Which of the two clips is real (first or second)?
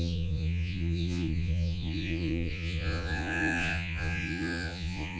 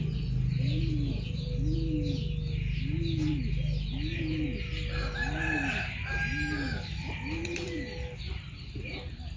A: second